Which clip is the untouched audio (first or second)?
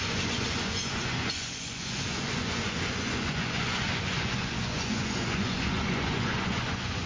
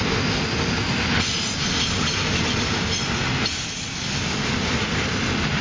second